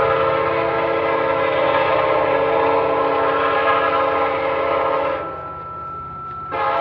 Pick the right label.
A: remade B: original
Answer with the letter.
B